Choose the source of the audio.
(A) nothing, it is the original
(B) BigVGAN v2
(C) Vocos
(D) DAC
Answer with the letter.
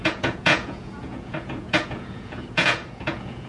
C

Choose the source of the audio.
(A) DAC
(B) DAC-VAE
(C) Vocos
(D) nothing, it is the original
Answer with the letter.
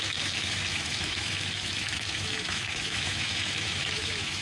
B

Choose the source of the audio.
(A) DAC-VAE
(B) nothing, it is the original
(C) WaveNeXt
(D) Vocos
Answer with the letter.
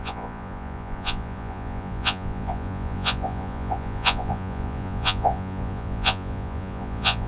D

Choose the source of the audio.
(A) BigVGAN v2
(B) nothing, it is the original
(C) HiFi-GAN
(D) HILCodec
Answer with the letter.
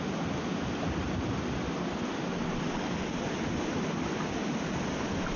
B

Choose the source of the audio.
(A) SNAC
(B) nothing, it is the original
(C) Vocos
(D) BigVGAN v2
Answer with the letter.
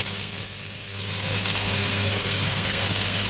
A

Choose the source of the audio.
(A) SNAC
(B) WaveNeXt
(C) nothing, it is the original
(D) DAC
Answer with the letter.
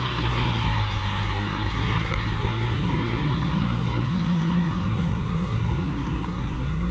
A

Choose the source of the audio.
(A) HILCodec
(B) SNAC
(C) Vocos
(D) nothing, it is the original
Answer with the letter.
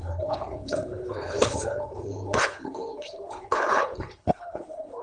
A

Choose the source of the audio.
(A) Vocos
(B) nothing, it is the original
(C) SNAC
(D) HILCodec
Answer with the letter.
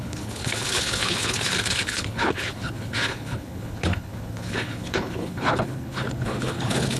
D